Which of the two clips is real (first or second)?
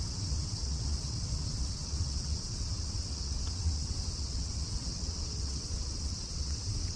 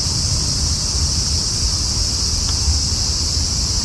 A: second